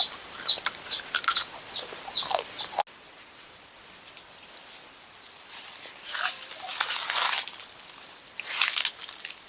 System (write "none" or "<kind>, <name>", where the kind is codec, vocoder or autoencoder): none